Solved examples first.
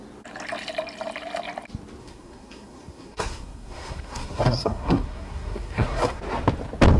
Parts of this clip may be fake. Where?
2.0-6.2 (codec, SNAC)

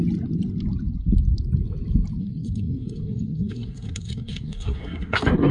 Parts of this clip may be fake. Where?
2.2-5.5 (codec, SNAC)

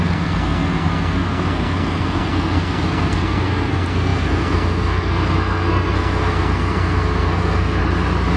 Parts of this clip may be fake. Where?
0.0-7.8 (codec, SNAC)

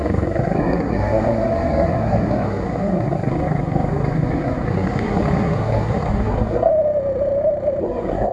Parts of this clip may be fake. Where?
0.0-6.7 (codec, SNAC); 7.8-8.3